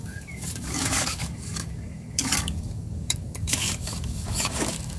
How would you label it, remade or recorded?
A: remade